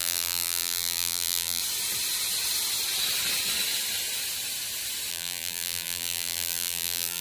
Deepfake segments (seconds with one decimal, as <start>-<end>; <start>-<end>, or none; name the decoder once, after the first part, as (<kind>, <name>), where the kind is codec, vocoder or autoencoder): 0.0-1.6 (vocoder, BigVGAN v2); 5.1-7.2